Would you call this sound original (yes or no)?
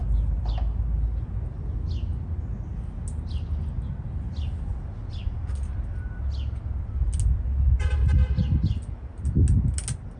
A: yes